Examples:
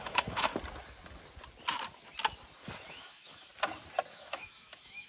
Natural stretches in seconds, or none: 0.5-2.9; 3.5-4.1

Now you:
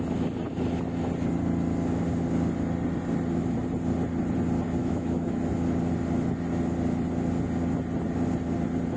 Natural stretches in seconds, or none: 0.0-4.8; 5.4-9.0

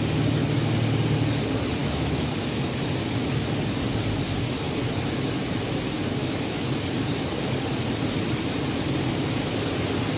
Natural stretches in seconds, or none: 0.0-1.8; 2.7-6.2; 6.7-10.2

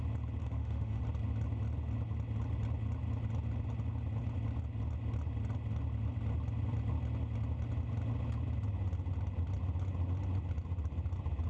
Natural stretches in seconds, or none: 0.0-0.4; 1.0-11.5

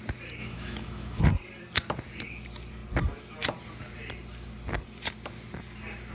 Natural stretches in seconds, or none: 0.0-0.4; 1.2-6.1

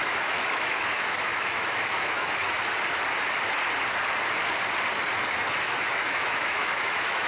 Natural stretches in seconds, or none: 2.6-5.6